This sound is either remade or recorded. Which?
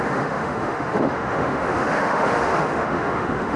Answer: remade